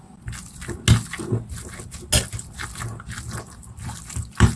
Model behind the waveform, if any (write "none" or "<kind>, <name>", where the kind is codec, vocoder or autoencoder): none